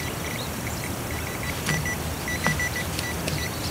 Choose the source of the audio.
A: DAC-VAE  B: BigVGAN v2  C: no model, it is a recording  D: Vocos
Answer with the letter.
C